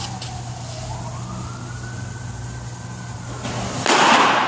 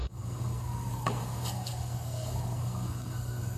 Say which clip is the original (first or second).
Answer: first